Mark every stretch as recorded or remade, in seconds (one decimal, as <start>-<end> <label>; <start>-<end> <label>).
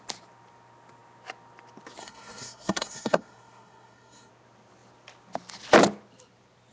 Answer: 0.0-2.0 recorded; 2.0-4.3 remade; 4.3-6.7 recorded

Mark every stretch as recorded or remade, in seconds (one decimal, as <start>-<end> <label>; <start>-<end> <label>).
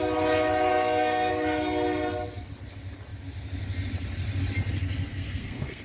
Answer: 0.0-0.7 recorded; 0.7-1.3 remade; 1.3-5.1 recorded; 5.1-5.8 remade